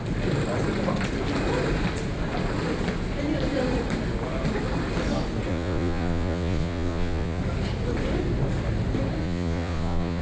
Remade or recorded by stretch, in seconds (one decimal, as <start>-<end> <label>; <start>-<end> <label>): 0.0-5.5 recorded; 5.5-7.4 remade; 7.4-9.2 recorded; 9.2-10.2 remade